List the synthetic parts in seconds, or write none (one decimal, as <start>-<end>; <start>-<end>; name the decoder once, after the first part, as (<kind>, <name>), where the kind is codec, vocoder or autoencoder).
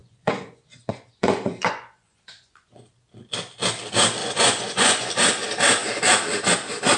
0.0-2.9 (vocoder, Vocos); 4.2-5.1